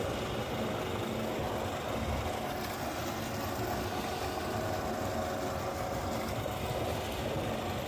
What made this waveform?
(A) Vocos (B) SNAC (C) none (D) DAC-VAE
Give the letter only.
C